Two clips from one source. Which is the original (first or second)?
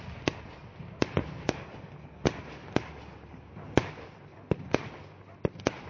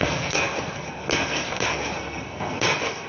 first